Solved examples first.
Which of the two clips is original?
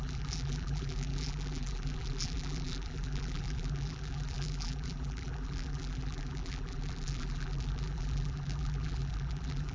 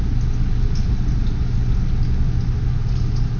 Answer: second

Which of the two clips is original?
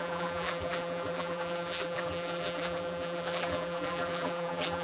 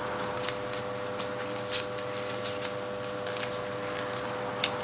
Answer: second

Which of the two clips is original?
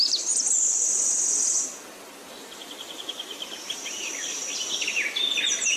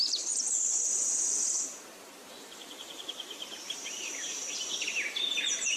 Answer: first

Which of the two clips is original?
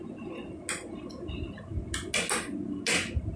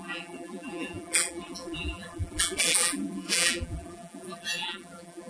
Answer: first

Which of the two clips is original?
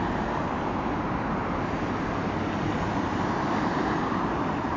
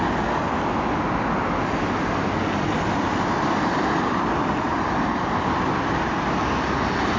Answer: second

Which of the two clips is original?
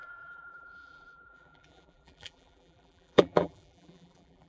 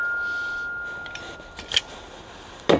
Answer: second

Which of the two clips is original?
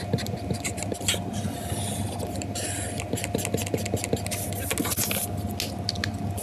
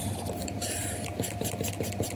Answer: first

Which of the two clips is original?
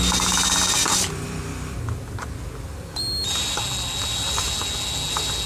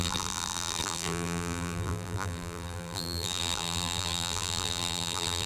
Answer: first